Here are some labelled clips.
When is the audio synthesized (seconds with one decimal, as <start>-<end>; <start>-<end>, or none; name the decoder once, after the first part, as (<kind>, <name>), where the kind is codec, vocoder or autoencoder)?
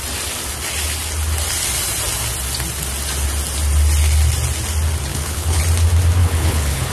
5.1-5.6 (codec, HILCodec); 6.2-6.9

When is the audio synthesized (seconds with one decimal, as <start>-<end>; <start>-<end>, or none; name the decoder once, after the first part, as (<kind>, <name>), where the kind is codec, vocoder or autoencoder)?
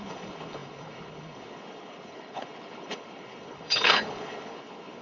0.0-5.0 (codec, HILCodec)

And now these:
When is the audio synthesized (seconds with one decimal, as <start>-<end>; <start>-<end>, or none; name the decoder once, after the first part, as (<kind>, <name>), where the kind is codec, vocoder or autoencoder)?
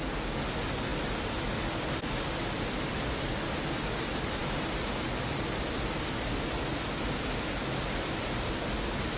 none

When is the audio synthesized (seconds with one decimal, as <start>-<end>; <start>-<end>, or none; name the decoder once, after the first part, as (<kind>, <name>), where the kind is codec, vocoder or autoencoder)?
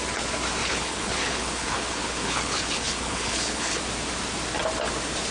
0.6-3.8 (codec, HILCodec)